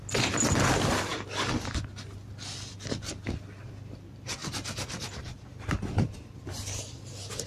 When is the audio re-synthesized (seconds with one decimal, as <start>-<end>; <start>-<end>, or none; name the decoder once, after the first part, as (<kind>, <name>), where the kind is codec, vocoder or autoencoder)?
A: 1.1-1.8 (vocoder, BigVGAN v2)